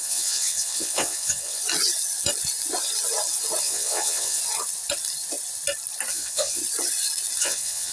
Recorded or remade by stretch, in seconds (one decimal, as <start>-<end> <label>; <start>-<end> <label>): 0.0-1.6 remade; 1.6-3.6 recorded; 3.6-4.4 remade; 4.4-6.1 recorded; 6.1-6.6 remade; 6.6-7.4 recorded; 7.4-7.9 remade